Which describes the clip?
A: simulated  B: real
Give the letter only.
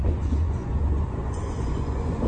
A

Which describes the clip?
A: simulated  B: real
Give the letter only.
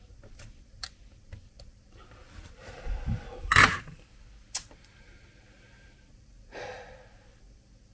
A